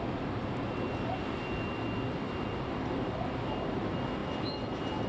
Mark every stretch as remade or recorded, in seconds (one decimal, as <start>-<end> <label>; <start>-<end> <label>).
0.0-5.1 recorded